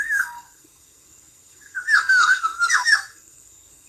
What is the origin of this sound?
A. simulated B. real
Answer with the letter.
A